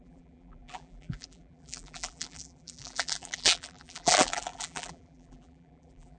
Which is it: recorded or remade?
remade